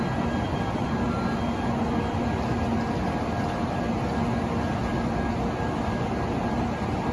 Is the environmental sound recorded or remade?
recorded